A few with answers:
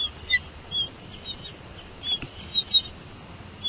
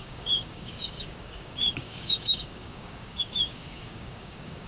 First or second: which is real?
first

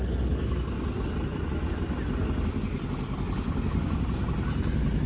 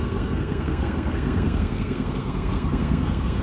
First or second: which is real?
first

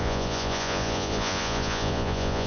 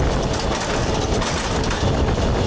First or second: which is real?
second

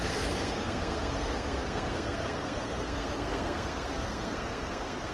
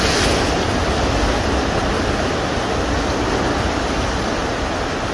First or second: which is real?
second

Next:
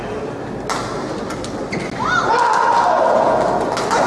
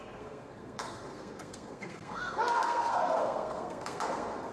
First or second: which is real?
first